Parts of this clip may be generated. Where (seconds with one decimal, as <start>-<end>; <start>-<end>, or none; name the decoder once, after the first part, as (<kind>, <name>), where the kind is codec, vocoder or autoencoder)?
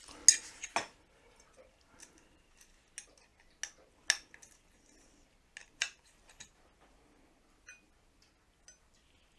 5.6-6.4 (vocoder, BigVGAN v2)